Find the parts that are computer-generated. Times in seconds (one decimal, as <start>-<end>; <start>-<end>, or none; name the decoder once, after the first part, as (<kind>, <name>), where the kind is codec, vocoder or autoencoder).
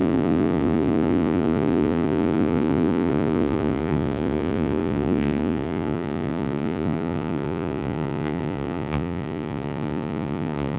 0.0-10.8 (vocoder, Vocos)